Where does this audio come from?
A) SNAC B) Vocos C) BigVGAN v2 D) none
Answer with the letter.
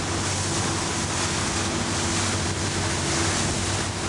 D